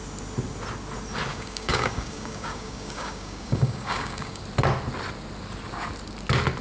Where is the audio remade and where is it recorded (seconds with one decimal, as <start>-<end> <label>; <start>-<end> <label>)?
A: 0.0-1.3 recorded; 1.3-4.4 remade; 4.4-6.6 recorded